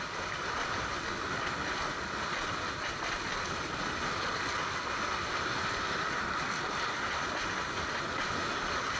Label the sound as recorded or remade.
recorded